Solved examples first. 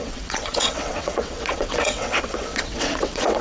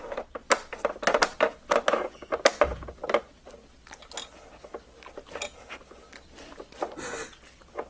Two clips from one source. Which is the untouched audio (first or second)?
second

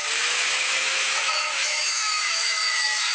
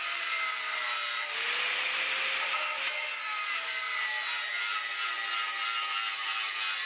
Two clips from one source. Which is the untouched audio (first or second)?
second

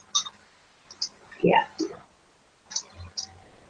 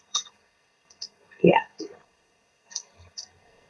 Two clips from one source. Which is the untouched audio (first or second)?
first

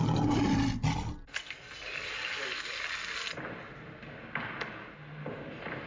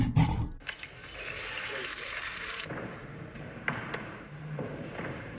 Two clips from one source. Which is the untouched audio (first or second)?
first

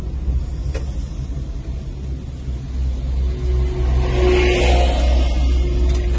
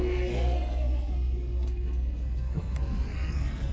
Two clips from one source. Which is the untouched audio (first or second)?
first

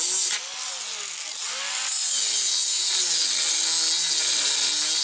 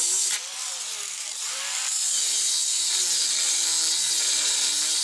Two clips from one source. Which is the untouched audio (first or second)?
first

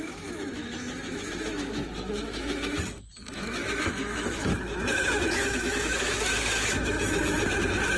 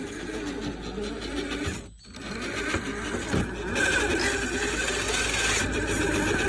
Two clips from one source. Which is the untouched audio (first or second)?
second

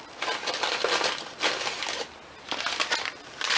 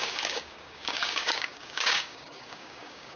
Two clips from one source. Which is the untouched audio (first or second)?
first